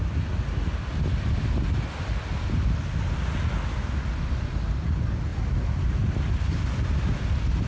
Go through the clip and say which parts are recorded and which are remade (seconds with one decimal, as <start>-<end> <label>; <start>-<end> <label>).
0.0-7.7 recorded